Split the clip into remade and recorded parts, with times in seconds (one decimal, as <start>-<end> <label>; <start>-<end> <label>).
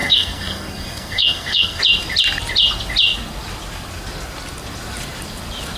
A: 0.0-1.8 remade; 1.8-5.8 recorded